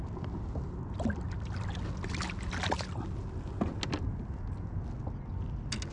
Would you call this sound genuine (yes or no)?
yes